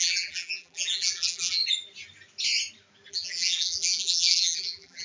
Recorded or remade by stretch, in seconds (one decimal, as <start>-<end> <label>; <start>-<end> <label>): 0.0-1.6 remade; 1.6-3.1 recorded; 3.1-5.0 remade